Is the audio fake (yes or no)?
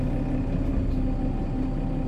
no